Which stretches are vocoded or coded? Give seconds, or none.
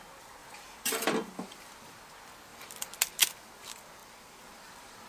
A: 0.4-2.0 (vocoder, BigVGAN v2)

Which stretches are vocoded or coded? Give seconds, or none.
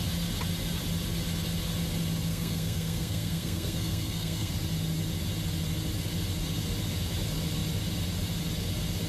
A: 2.3-4.5 (codec, SNAC)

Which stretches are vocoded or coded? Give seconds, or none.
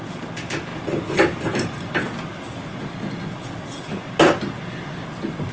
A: none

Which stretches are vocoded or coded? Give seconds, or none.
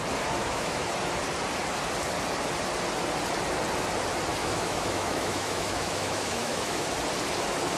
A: 0.4-0.9 (autoencoder, DAC-VAE); 4.4-6.8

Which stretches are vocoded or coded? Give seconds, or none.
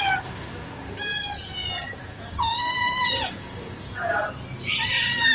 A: 1.1-4.3 (vocoder, Vocos)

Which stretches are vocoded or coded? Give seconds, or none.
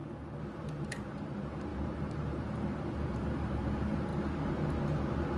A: 0.5-4.1 (vocoder, BigVGAN v2)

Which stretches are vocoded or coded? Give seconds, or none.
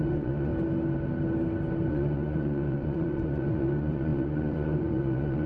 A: 0.0-0.5 (vocoder, Vocos); 1.9-5.5